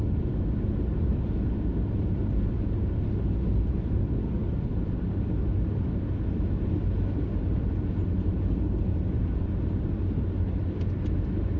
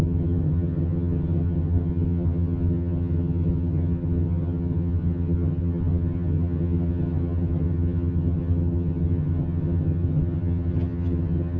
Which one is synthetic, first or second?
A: second